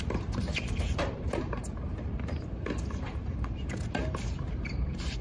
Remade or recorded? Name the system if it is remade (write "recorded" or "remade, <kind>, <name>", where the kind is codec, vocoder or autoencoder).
remade, vocoder, BigVGAN v2